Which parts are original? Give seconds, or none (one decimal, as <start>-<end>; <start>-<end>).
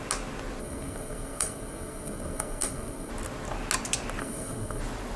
0.0-0.6; 3.1-4.2; 4.8-5.2